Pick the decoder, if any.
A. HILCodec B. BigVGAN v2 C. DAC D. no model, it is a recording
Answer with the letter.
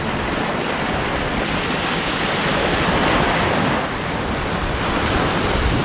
D